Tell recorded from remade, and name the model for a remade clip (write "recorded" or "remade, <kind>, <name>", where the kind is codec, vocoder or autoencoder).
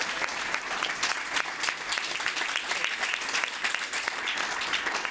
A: recorded